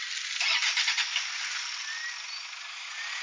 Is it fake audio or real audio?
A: real